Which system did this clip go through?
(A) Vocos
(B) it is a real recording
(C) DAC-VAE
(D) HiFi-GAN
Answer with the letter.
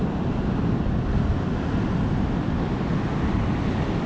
B